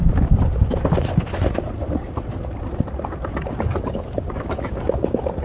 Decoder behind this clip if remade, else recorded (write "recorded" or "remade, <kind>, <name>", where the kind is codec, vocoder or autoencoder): recorded